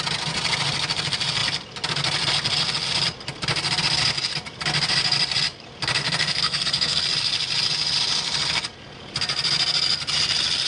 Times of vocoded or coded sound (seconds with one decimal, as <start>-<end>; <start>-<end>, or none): 6.0-7.0